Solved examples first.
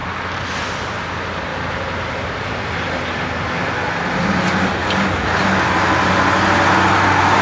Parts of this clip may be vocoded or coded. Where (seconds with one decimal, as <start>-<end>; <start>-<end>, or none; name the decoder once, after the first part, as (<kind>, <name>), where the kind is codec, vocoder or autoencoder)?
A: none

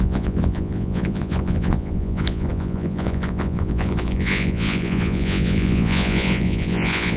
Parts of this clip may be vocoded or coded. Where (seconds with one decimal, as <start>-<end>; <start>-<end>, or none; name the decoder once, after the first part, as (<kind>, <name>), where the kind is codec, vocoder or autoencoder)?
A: 0.0-7.2 (vocoder, Vocos)

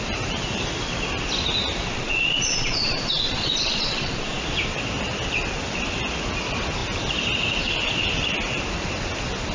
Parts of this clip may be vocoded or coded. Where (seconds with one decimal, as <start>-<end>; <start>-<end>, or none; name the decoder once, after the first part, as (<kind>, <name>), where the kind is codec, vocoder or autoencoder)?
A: 1.9-4.4 (vocoder, Vocos)

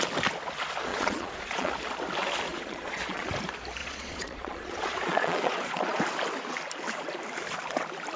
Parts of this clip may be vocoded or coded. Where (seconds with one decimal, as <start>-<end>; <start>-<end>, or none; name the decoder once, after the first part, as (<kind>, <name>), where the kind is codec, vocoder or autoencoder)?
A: 0.9-1.7 (vocoder, Vocos); 2.5-3.3; 3.8-6.0